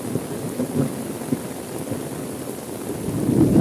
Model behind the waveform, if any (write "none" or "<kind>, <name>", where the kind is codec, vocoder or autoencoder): none